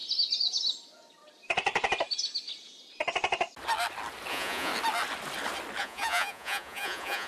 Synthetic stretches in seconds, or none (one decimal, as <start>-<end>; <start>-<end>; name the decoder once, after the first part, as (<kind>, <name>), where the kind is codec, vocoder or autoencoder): 4.3-4.7 (vocoder, Vocos); 5.8-7.3